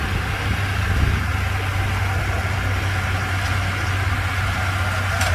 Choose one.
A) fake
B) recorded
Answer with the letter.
B